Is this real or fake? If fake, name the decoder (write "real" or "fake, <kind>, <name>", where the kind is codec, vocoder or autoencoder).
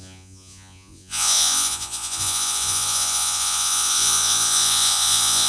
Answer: fake, vocoder, Vocos